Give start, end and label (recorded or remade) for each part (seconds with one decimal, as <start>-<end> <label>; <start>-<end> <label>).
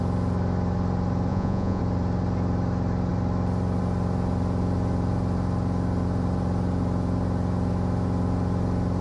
0.0-1.3 recorded; 1.3-1.8 remade; 1.8-9.0 recorded